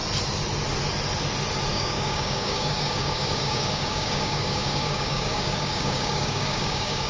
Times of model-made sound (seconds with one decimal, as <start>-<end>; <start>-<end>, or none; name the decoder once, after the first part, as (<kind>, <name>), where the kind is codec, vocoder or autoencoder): 1.7-7.1 (codec, DAC)